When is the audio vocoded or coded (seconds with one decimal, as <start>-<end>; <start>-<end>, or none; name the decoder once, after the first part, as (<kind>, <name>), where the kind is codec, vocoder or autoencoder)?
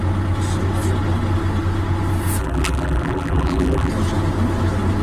2.4-3.9 (vocoder, BigVGAN v2)